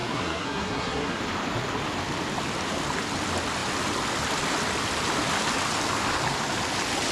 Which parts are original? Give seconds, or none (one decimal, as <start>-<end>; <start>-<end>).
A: 1.2-7.1